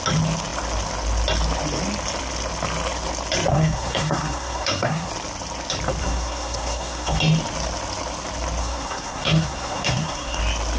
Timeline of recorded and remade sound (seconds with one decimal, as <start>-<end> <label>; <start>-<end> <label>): 0.0-3.5 recorded; 3.5-5.1 remade; 5.1-6.0 recorded; 6.0-7.2 remade; 7.2-8.6 recorded; 8.6-10.4 remade; 10.4-10.8 recorded